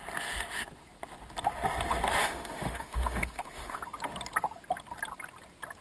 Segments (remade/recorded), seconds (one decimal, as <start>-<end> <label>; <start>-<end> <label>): 0.0-2.2 recorded; 2.2-3.8 remade; 3.8-5.8 recorded